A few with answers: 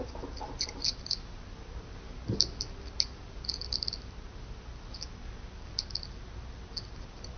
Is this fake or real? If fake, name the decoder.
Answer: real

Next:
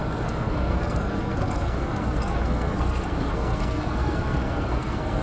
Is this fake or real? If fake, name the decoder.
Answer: fake, codec, SNAC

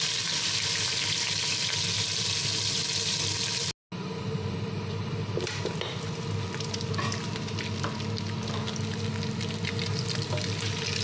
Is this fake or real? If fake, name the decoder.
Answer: real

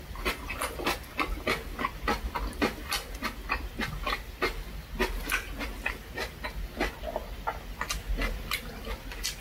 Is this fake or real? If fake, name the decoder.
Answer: real